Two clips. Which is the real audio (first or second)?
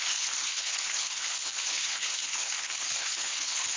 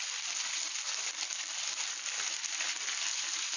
second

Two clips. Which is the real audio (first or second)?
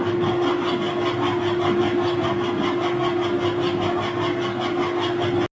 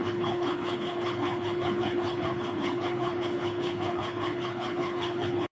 first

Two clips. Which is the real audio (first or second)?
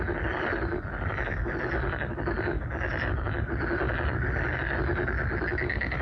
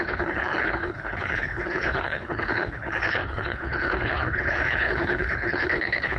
first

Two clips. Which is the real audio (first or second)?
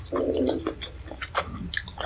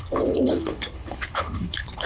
first